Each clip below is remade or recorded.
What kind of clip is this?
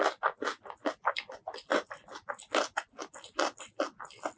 recorded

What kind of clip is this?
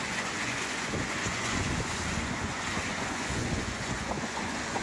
remade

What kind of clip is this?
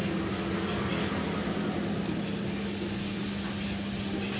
recorded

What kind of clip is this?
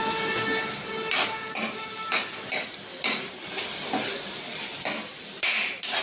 recorded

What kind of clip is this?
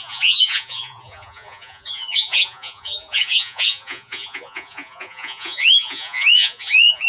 remade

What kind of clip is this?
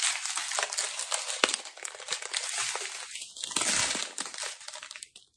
recorded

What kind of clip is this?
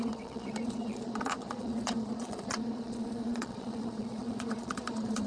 remade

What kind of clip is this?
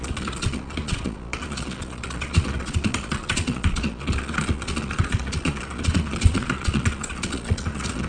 remade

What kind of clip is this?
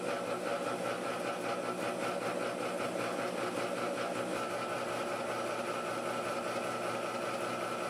recorded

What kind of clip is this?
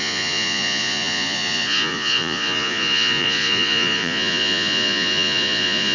remade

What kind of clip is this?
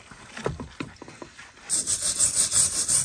recorded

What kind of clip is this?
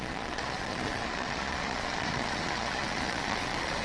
remade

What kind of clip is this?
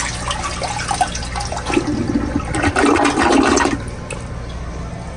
recorded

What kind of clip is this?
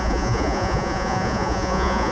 remade